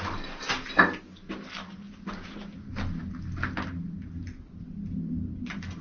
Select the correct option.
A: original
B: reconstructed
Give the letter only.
A